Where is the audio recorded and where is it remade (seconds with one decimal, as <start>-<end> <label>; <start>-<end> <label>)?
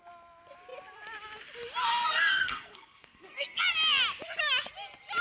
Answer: 0.0-1.9 recorded; 1.9-3.6 remade; 3.6-5.2 recorded